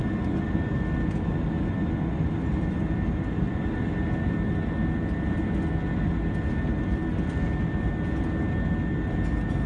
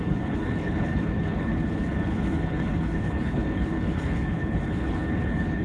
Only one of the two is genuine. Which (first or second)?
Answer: first